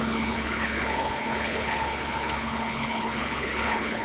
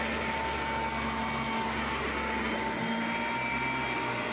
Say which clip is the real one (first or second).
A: second